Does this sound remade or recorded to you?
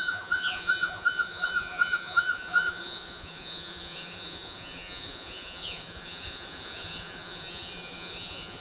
remade